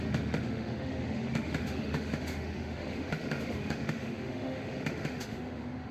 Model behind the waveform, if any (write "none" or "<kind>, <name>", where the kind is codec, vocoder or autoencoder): autoencoder, DAC-VAE